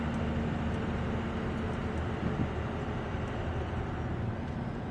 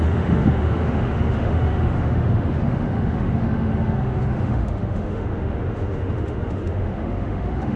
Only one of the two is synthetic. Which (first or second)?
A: second